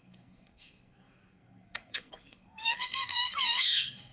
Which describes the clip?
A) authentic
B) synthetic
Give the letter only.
B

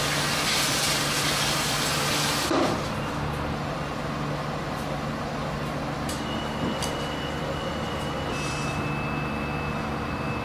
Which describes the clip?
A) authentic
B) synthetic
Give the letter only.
A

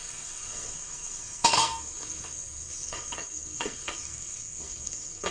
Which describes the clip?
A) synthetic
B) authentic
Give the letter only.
A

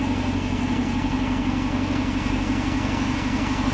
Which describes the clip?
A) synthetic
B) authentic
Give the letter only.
A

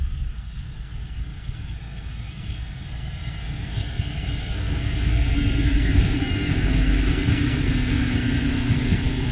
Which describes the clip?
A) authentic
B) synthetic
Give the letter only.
B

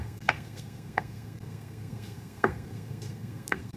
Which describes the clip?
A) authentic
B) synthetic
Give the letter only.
B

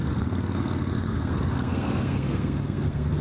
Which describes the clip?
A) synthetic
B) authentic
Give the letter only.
A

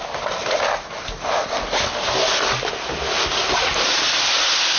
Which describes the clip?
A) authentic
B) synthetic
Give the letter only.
A